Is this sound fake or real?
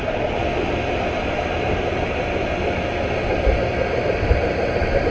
real